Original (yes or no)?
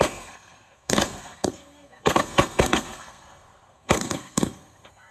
no